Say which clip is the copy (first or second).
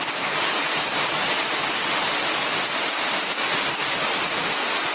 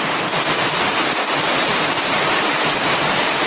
second